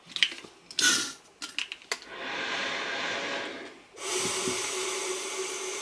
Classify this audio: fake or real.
real